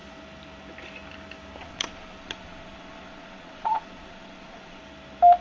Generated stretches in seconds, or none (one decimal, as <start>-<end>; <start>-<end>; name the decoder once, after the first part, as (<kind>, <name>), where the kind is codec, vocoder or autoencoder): 1.6-4.8 (vocoder, Vocos)